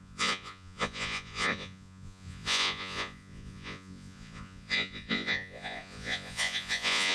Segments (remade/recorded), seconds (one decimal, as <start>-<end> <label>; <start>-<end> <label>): 0.0-7.1 remade